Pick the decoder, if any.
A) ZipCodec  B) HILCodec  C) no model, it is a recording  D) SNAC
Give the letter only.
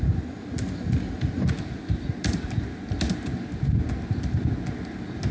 C